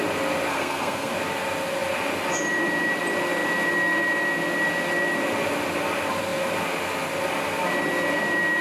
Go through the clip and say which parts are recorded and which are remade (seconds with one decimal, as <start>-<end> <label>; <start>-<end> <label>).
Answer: 0.0-0.5 recorded; 0.5-1.1 remade; 1.1-8.6 recorded